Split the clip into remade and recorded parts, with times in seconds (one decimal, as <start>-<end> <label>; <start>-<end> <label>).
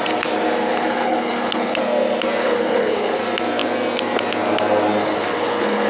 0.0-0.7 recorded; 0.7-1.8 remade; 1.8-2.4 recorded; 2.4-3.2 remade; 3.2-5.0 recorded; 5.0-5.9 remade